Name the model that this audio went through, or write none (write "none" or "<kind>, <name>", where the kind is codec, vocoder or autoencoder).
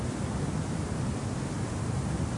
vocoder, BigVGAN v2